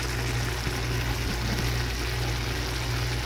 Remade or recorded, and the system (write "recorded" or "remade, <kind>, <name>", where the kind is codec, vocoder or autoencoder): recorded